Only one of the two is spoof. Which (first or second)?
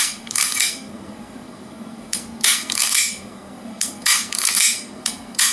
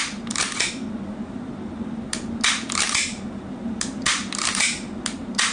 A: first